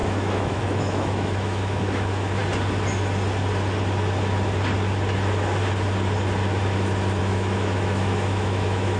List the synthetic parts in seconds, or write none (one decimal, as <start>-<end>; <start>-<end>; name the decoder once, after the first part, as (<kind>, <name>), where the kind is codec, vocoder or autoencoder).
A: 0.0-2.4 (autoencoder, DAC-VAE); 7.2-9.0